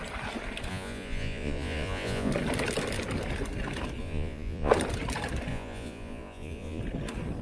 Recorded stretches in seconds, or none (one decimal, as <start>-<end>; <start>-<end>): 0.0-0.7; 2.3-4.0; 4.7-5.5; 6.8-7.4